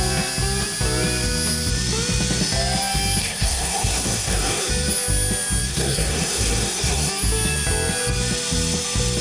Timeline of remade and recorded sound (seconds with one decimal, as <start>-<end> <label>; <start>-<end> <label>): 0.0-3.2 recorded; 3.2-4.7 remade; 4.7-5.7 recorded; 5.7-7.1 remade; 7.1-9.2 recorded